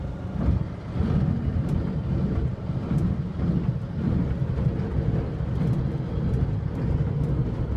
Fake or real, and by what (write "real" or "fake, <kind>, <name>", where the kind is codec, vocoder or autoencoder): real